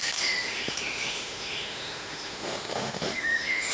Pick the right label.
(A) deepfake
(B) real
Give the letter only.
A